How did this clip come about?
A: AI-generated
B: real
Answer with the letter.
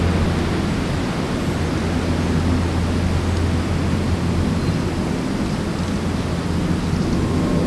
B